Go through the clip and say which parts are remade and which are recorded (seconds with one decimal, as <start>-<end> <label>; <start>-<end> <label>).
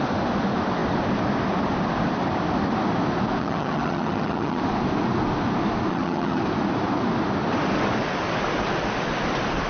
0.0-3.4 recorded; 3.4-4.6 remade; 4.6-5.9 recorded; 5.9-6.4 remade; 6.4-9.7 recorded